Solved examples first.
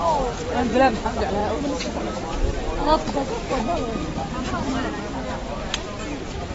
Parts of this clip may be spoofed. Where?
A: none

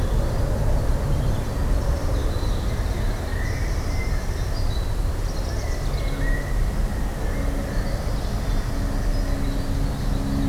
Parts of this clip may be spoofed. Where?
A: 3.3-5.2 (vocoder, BigVGAN v2)